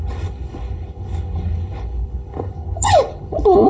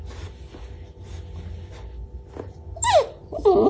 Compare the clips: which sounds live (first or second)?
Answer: second